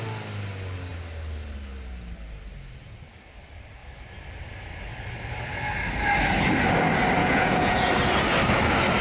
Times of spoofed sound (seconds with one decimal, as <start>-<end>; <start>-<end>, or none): 7.2-7.9